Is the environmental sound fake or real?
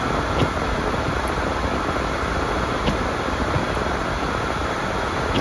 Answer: real